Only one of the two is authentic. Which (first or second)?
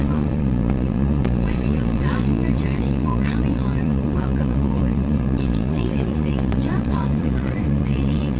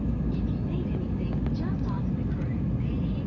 second